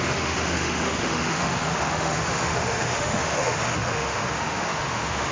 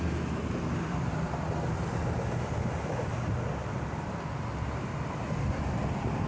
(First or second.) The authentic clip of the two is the second